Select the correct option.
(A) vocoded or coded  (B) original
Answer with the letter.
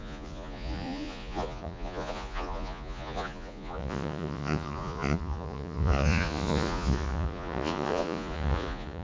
A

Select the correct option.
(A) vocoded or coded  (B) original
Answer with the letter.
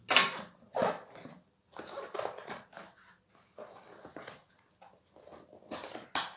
B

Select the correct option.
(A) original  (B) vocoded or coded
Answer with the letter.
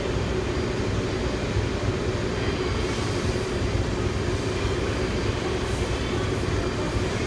A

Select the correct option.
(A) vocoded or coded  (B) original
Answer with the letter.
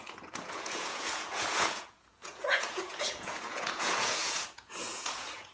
A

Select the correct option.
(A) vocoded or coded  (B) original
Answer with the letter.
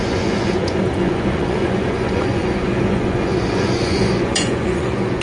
A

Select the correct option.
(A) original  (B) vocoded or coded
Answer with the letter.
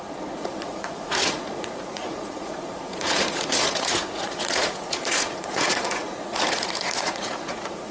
B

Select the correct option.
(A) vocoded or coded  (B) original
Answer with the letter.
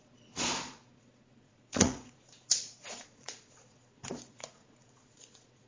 A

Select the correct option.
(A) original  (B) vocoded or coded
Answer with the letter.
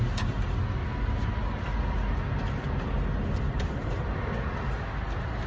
A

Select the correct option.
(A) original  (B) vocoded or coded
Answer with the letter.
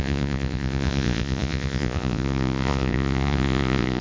B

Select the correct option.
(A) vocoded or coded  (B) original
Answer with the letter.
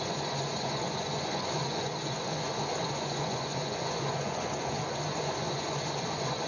A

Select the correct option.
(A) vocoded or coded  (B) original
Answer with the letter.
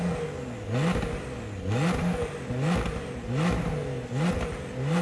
B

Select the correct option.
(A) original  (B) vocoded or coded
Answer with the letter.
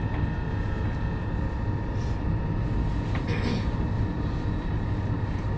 A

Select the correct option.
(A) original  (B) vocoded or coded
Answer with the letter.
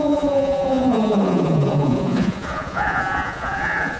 B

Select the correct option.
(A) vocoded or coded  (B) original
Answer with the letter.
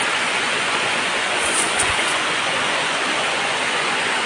A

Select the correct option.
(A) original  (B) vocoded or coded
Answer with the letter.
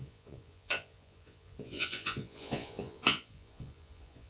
B